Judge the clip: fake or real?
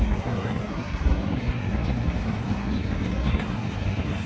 fake